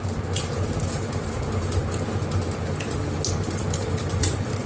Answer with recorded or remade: recorded